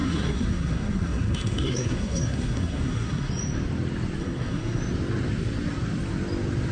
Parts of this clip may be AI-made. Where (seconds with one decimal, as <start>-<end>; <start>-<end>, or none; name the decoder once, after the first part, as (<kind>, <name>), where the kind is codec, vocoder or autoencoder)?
0.0-3.3 (codec, SNAC); 4.2-4.8